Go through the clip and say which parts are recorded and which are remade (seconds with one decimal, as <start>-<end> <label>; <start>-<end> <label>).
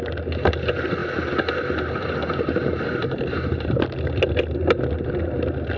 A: 0.0-5.8 recorded